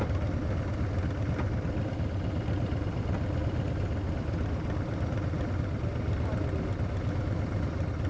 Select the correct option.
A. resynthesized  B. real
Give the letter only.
B